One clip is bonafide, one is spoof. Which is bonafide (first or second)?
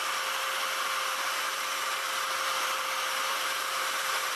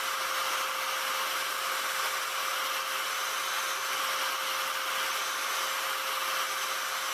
second